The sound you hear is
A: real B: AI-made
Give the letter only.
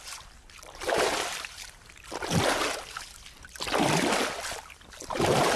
B